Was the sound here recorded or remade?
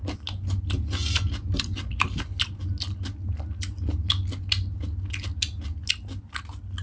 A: recorded